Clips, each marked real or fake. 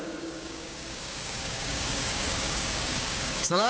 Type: fake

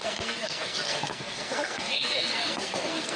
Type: fake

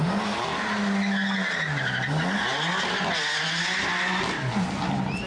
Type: real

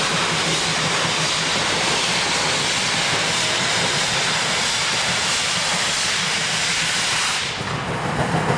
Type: real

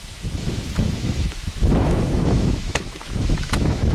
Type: fake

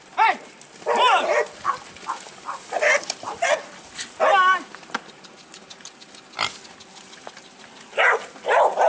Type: real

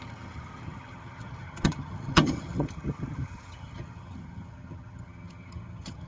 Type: fake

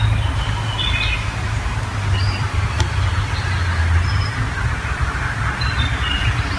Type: real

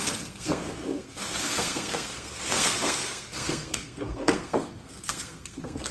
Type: fake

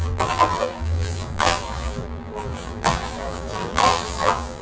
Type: fake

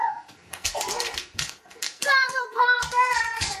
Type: fake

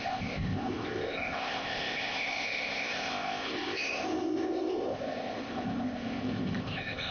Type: fake